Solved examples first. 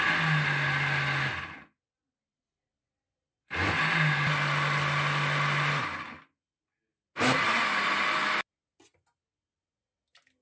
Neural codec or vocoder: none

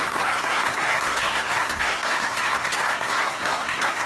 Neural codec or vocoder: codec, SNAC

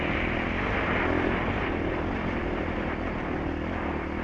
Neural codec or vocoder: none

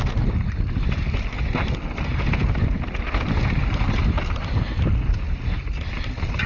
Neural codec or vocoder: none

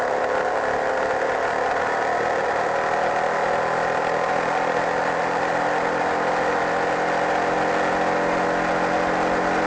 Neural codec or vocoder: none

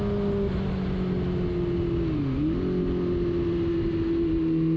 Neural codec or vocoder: none